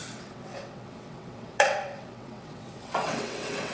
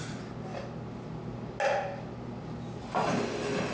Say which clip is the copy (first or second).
first